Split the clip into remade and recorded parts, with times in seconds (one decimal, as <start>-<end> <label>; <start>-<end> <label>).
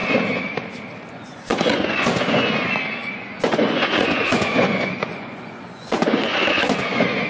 0.0-1.1 recorded; 1.1-7.3 remade